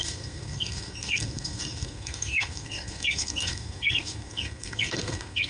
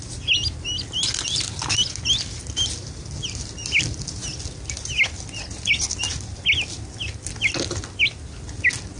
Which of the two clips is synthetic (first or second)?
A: first